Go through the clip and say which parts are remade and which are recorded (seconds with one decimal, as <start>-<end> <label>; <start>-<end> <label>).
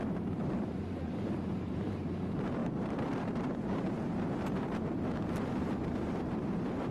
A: 0.0-6.9 remade